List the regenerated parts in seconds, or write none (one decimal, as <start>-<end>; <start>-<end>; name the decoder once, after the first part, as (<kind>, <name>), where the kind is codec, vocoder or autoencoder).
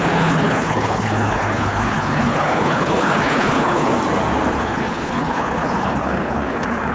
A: 0.0-3.9 (codec, HILCodec); 4.5-6.9